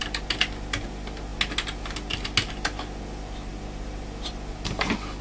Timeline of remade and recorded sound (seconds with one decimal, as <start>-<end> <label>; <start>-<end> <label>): 0.0-5.2 recorded